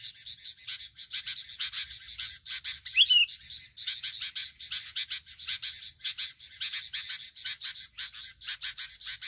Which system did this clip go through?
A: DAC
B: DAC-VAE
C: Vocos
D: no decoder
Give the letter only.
D